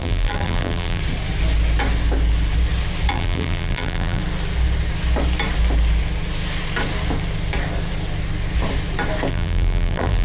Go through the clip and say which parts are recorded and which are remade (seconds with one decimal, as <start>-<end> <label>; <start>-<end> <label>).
0.0-1.0 remade; 1.0-3.1 recorded; 3.1-4.2 remade; 4.2-9.3 recorded; 9.3-10.2 remade